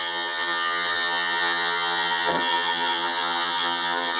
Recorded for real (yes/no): no